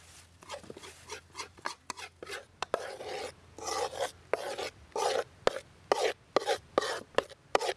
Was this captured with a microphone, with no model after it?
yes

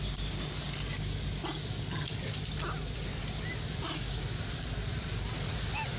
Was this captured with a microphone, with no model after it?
yes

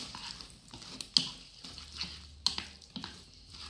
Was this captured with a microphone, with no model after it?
yes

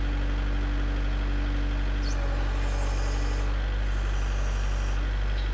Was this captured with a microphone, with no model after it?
yes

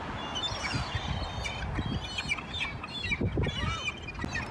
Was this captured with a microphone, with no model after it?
yes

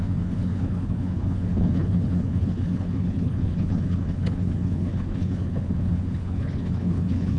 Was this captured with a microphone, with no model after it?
no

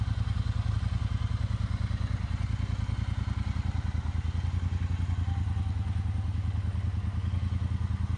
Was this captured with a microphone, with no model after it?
yes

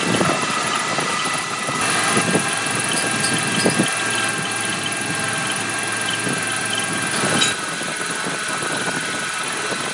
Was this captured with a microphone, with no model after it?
yes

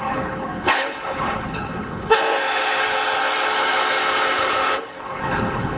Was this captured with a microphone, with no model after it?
no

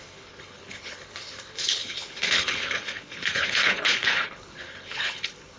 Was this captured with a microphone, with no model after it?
no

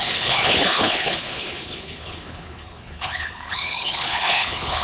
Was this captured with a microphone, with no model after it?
no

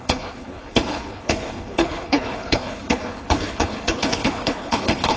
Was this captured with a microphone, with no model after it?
no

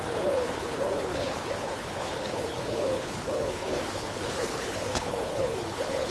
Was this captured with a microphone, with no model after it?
no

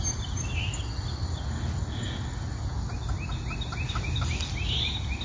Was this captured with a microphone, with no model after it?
yes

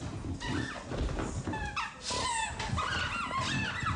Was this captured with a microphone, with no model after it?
yes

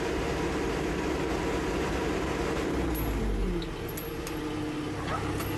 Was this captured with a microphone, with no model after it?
yes